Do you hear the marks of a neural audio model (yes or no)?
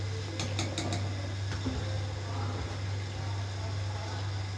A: no